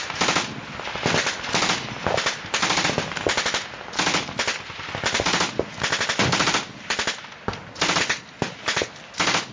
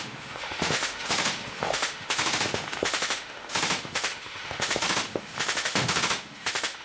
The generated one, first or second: second